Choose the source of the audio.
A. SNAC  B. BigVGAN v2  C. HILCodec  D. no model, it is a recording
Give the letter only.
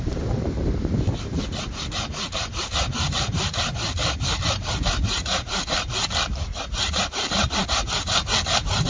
B